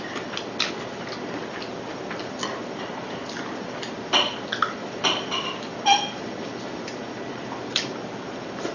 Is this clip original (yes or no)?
yes